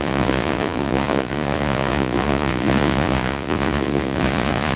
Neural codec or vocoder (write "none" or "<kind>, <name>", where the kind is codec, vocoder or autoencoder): vocoder, Vocos